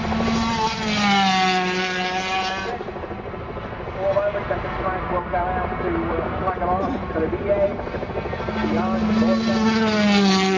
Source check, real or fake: real